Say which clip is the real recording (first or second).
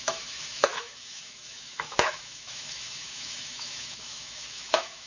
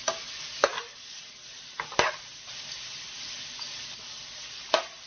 second